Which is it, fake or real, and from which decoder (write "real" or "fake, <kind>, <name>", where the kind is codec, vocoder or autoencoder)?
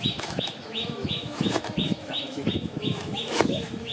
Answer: fake, autoencoder, DAC-VAE